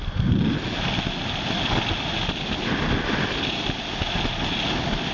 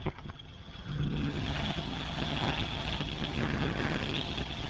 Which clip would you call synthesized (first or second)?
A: second